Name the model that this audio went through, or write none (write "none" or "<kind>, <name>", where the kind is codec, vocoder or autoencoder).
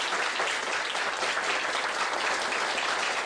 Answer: none